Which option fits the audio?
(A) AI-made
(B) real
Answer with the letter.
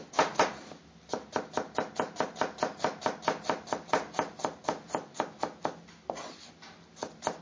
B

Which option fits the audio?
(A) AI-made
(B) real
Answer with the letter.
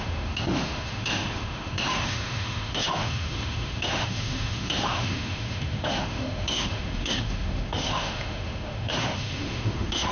A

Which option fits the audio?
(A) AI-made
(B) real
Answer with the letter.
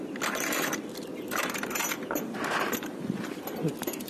B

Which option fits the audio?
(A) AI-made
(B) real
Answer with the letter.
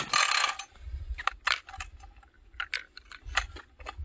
B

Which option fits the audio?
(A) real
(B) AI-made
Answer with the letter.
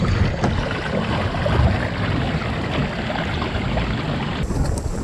A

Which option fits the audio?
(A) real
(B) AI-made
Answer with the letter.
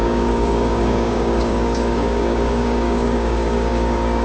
B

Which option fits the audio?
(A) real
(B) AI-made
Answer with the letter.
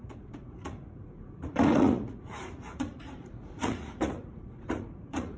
B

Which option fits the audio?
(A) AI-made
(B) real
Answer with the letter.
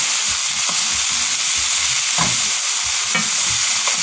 B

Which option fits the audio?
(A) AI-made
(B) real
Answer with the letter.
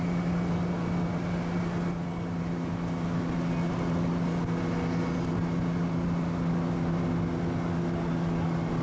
B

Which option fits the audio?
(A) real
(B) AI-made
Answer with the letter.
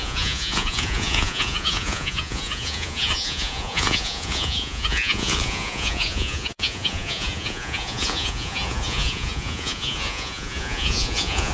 B